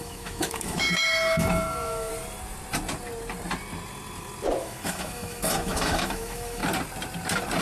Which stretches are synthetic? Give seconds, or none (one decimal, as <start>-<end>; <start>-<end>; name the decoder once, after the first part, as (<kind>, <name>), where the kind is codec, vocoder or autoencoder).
0.0-2.1 (autoencoder, DAC-VAE); 4.6-6.6